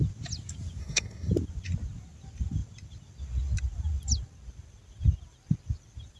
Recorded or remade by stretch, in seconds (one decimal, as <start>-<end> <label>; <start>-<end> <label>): 0.0-0.8 recorded; 0.8-1.3 remade; 1.3-6.2 recorded